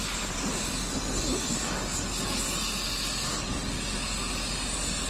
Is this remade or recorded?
recorded